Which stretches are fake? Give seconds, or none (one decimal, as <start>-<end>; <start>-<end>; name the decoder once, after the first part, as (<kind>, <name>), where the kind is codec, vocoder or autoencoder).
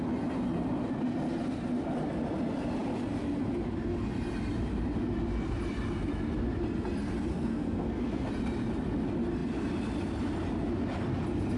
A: 7.3-8.3 (codec, SNAC)